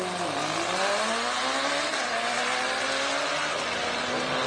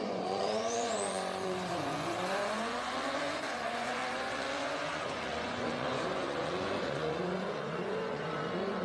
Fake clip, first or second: second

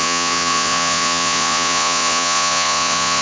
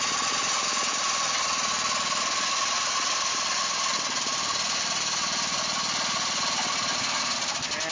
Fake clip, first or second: first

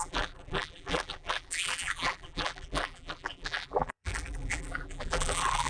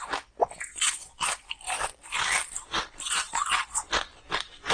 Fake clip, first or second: first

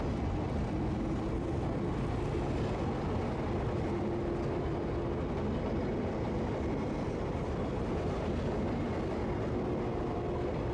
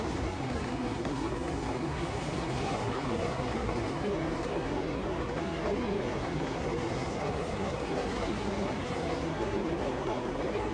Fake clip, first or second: second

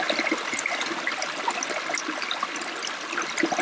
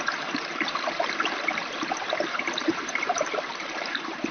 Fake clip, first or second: second